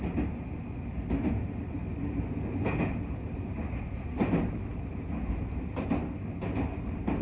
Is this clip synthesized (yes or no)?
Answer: no